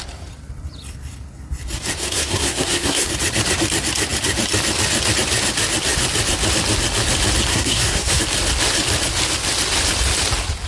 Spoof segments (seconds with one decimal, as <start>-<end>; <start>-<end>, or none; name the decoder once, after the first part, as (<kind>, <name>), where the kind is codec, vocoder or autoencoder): 2.0-3.1 (codec, SNAC); 7.5-8.2